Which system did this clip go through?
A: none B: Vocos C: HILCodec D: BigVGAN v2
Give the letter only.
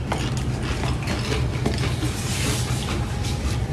A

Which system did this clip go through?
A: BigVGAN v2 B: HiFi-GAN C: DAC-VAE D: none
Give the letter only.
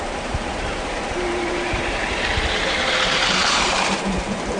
A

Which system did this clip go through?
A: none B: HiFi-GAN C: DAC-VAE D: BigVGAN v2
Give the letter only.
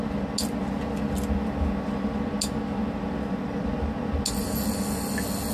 A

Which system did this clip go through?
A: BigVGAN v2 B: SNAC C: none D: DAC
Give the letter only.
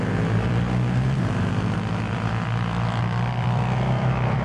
A